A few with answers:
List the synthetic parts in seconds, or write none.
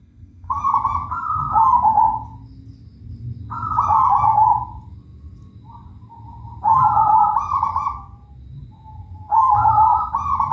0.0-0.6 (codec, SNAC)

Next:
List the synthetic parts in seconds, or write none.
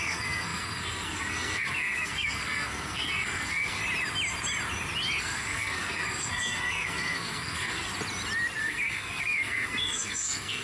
0.0-3.8 (codec, SNAC); 5.2-7.9; 8.6-10.6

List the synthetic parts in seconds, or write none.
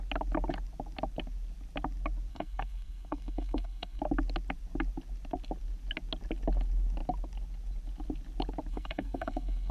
2.3-4.0 (codec, SNAC); 8.7-9.7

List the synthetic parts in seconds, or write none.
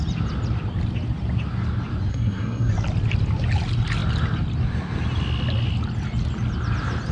2.1-2.7 (codec, SNAC)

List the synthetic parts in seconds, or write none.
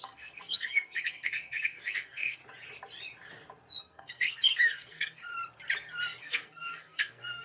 0.0-2.4 (codec, SNAC); 3.8-5.3; 6.2-7.4